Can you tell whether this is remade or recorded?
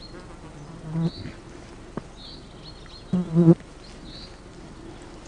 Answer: recorded